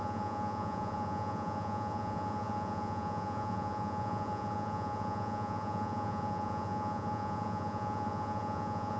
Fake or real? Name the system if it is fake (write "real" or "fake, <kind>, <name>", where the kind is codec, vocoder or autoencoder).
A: fake, vocoder, Vocos